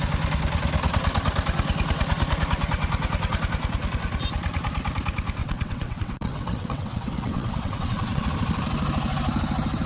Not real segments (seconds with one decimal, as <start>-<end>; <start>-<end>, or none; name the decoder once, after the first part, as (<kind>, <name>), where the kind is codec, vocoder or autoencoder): 5.4-8.3 (vocoder, WaveNeXt)